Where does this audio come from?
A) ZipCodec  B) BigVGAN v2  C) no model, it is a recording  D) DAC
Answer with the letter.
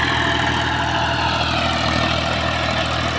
C